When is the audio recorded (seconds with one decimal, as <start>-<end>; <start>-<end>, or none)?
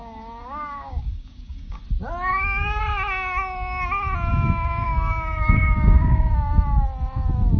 1.8-2.3; 2.8-4.3; 6.3-7.6